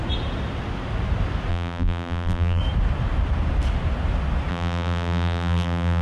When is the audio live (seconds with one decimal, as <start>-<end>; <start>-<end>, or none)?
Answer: 0.0-1.5; 2.6-4.5